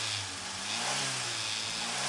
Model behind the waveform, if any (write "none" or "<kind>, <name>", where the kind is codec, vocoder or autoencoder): none